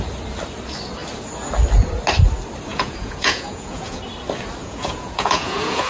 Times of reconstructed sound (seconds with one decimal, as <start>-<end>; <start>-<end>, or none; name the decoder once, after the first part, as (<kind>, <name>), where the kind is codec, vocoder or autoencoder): 2.7-4.0 (vocoder, Vocos); 4.6-5.9